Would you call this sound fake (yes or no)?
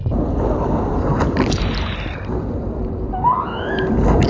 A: yes